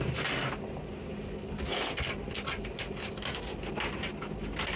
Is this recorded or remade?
recorded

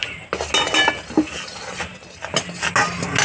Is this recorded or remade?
recorded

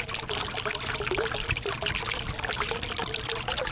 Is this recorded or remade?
recorded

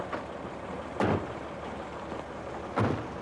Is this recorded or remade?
recorded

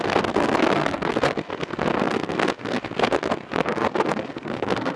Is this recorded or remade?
remade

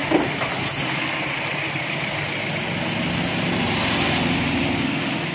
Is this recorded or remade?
recorded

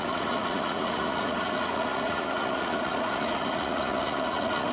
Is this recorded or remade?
remade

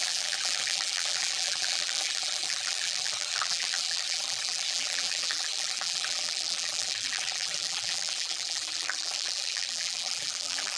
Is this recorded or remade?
remade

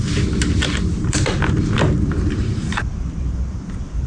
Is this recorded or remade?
remade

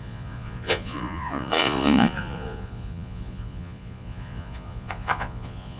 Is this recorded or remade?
remade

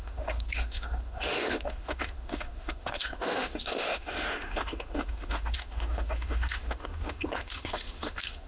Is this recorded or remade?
remade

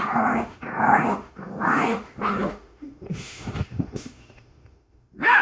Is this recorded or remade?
remade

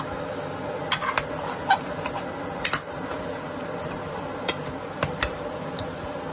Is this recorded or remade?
recorded